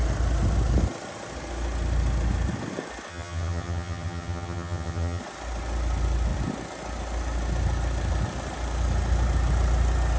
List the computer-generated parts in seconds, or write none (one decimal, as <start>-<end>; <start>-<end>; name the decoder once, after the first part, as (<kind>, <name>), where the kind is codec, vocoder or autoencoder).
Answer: 3.1-5.2 (vocoder, HiFi-GAN)